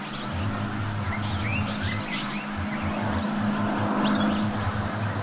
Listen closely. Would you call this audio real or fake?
real